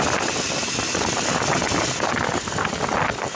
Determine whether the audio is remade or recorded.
recorded